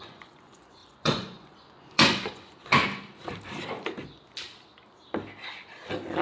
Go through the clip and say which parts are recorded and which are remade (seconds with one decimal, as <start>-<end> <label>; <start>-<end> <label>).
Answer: 0.0-2.8 remade; 2.8-6.2 recorded